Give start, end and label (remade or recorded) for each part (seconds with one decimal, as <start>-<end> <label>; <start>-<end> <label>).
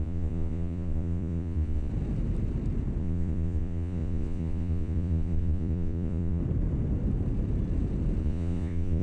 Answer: 0.0-1.9 remade; 1.9-3.0 recorded; 3.0-6.4 remade; 6.4-8.2 recorded; 8.2-9.0 remade